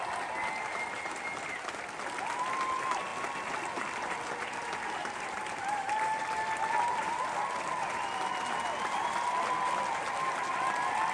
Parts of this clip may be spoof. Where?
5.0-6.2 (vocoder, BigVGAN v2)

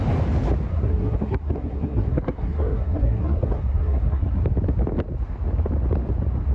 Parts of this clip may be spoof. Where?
0.7-4.4 (codec, SNAC)

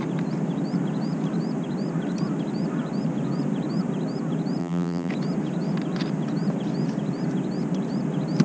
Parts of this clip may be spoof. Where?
4.6-5.1 (vocoder, BigVGAN v2)

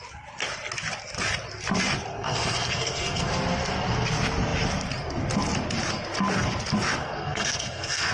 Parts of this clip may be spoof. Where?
2.1-3.3 (codec, SNAC); 7.0-8.1